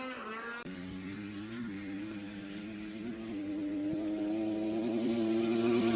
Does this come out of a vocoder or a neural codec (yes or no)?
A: yes